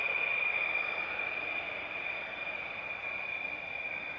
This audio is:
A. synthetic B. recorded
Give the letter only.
B